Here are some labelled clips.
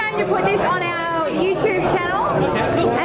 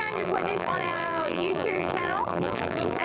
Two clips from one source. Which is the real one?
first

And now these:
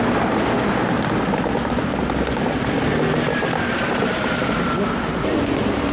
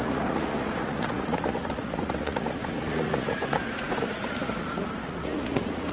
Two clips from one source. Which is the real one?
first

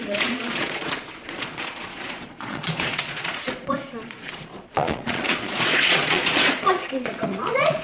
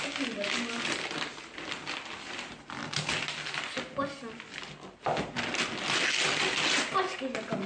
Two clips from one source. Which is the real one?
second